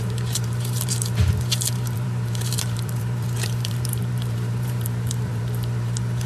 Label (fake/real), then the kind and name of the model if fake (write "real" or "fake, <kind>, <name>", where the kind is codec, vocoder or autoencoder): fake, vocoder, BigVGAN v2